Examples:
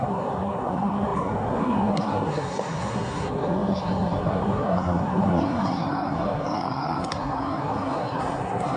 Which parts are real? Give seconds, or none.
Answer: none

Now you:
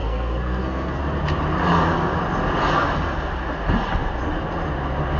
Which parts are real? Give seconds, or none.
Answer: 1.0-5.2

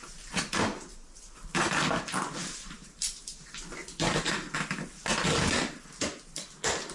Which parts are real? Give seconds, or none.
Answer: 0.0-2.4; 3.4-6.9